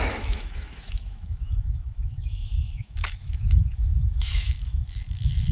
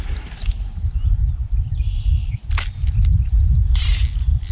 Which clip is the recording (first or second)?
second